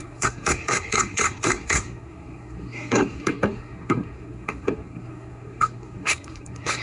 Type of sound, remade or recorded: remade